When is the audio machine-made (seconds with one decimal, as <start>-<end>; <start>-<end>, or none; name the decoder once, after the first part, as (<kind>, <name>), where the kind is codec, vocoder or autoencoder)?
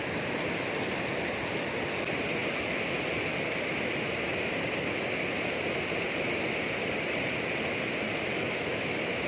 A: 8.3-9.3 (autoencoder, DAC-VAE)